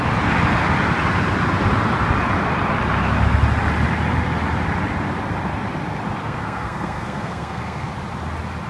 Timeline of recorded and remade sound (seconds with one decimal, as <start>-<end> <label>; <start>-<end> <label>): 0.0-6.2 recorded; 6.2-7.9 remade; 7.9-8.7 recorded